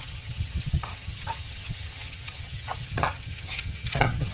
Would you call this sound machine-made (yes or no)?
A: yes